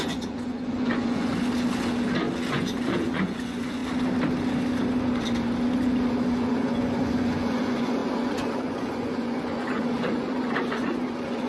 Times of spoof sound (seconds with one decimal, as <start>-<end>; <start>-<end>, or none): 0.0-1.3; 2.5-3.8; 6.3-11.5